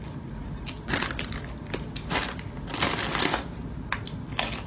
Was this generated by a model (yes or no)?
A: no